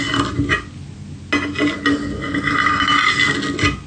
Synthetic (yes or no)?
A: no